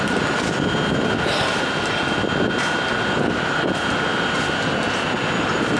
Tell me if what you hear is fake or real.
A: real